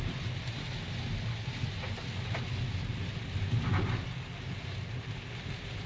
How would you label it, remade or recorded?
recorded